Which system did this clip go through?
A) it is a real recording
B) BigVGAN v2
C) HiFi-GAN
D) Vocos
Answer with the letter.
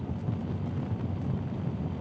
A